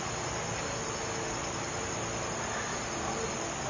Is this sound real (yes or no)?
yes